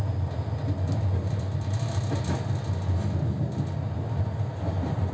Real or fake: real